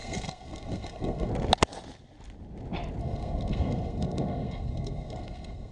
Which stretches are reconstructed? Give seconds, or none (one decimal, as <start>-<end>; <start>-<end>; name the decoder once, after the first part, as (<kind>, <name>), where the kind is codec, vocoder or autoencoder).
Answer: 0.0-1.3 (codec, SNAC); 3.0-5.7